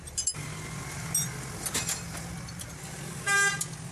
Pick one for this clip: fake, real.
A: real